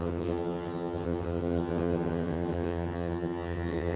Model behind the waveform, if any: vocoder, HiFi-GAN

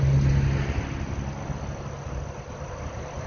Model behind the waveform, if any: none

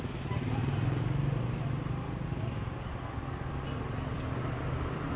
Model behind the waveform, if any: none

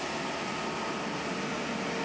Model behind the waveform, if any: none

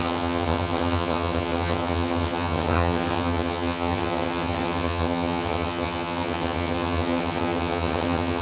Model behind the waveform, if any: vocoder, HiFi-GAN